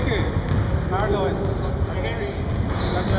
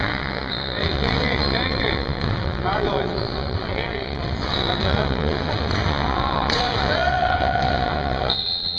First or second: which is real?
first